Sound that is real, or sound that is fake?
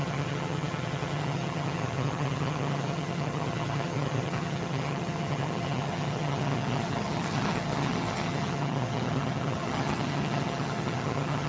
fake